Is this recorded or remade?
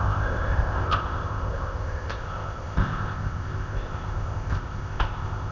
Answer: remade